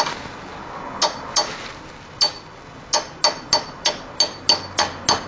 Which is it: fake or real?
real